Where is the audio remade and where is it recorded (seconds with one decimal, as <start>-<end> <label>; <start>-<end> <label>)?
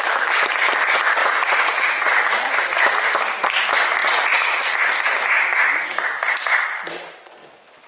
0.0-1.2 recorded; 1.2-2.5 remade; 2.5-4.0 recorded; 4.0-4.6 remade; 4.6-7.9 recorded